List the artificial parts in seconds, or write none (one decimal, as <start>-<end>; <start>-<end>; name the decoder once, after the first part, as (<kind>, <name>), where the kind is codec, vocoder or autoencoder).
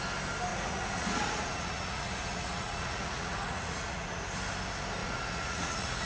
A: 0.5-4.2 (vocoder, Vocos); 5.0-6.1